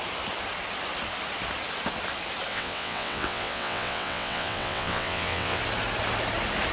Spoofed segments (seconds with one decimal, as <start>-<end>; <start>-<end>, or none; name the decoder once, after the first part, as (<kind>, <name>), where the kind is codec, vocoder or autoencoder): 2.5-5.6 (vocoder, WaveNeXt)